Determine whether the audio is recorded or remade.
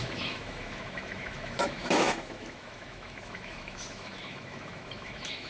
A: remade